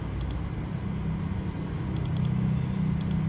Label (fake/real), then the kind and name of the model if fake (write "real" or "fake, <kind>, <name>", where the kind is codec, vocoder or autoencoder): real